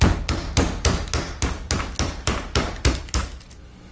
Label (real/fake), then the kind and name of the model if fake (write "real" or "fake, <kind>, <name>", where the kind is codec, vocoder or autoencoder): real